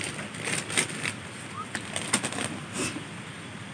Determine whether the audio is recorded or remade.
recorded